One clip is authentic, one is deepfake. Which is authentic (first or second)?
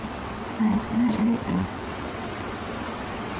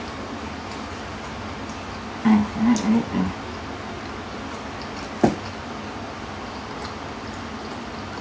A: second